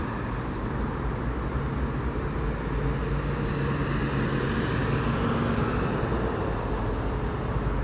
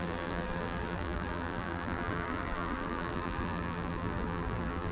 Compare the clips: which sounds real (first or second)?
first